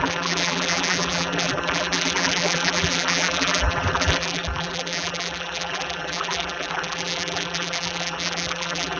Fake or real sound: fake